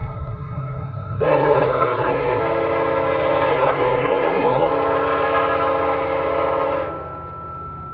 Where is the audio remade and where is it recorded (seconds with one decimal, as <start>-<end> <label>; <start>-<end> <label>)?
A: 0.0-2.4 remade; 2.4-3.5 recorded; 3.5-4.7 remade; 4.7-7.9 recorded

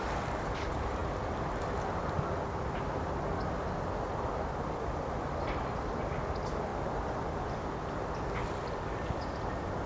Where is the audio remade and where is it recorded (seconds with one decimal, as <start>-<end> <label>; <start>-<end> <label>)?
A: 0.0-9.9 recorded

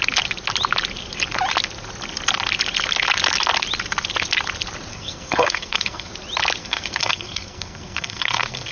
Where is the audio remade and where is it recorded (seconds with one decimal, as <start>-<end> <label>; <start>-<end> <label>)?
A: 0.0-4.9 recorded; 4.9-6.1 remade; 6.1-6.6 recorded; 6.6-8.7 remade

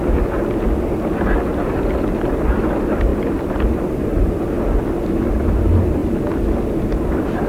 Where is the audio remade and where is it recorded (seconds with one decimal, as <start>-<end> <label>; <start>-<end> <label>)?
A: 0.0-7.5 recorded

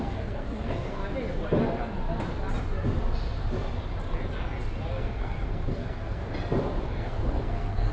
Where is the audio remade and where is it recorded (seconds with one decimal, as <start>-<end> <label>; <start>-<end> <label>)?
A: 0.0-1.0 remade; 1.0-4.9 recorded; 4.9-6.2 remade; 6.2-6.8 recorded; 6.8-7.9 remade

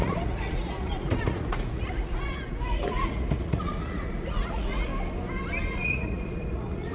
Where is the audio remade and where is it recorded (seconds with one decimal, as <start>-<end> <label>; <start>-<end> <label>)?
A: 0.0-4.9 remade; 4.9-5.7 recorded; 5.7-6.9 remade

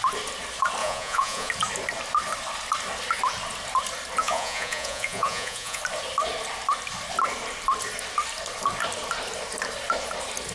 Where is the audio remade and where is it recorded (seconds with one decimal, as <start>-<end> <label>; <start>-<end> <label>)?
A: 0.0-0.8 recorded; 0.8-1.5 remade; 1.5-4.2 recorded; 4.2-5.8 remade; 5.8-10.5 recorded

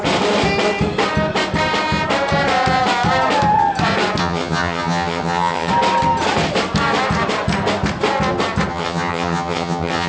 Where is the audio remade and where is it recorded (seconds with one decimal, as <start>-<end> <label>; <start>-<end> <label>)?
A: 0.0-4.2 recorded; 4.2-5.7 remade; 5.7-8.7 recorded; 8.7-10.1 remade